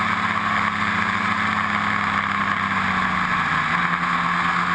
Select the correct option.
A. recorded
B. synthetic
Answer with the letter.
A